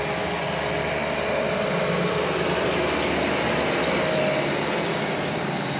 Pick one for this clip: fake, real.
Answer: real